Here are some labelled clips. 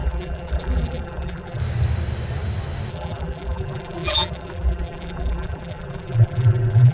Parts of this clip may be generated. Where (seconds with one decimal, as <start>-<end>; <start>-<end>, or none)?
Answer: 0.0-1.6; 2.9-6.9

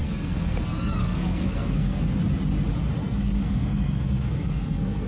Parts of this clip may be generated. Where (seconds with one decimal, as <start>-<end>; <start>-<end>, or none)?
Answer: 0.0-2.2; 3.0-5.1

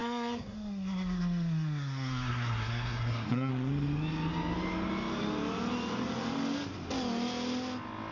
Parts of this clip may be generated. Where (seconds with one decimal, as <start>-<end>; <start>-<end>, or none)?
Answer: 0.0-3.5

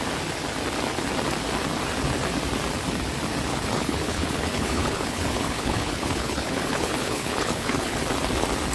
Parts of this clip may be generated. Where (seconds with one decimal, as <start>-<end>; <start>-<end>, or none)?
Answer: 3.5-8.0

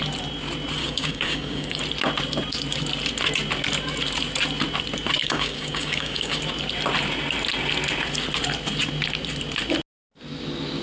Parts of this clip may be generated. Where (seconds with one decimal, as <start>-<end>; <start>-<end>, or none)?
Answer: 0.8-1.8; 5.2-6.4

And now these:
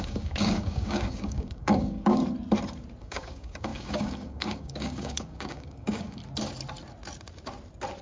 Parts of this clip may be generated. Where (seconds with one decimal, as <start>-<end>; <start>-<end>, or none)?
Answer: 0.0-2.2; 3.0-6.2

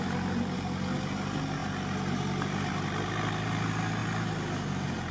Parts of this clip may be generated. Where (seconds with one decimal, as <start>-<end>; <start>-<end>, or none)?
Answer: none